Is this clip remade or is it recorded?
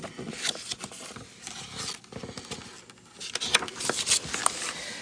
recorded